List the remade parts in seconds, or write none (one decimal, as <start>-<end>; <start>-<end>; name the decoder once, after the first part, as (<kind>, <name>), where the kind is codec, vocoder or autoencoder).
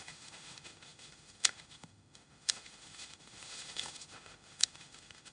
0.0-5.3 (autoencoder, DAC-VAE)